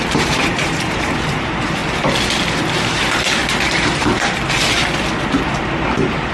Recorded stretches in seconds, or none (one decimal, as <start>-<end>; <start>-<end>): 1.8-2.7; 4.1-6.3